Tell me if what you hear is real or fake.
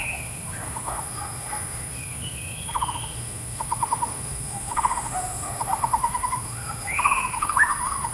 fake